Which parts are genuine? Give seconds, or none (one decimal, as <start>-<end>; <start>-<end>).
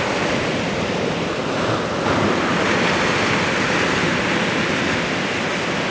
0.0-5.9